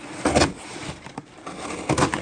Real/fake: real